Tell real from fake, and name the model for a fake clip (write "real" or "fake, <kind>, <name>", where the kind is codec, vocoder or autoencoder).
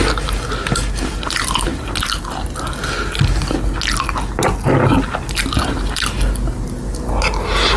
real